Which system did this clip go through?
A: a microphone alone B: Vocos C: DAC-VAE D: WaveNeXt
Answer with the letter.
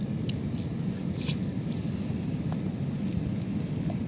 A